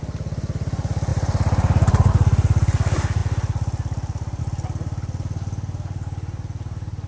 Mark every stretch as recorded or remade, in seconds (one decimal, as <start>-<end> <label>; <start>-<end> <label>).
0.0-1.1 recorded; 1.1-2.1 remade; 2.1-7.1 recorded